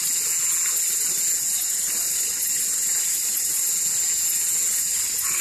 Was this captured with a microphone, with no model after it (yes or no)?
yes